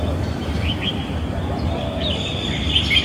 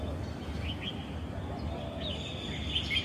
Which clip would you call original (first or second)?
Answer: second